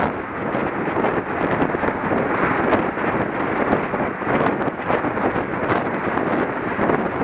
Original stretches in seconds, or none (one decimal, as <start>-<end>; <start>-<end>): 0.0-0.6; 4.9-5.5; 6.2-7.2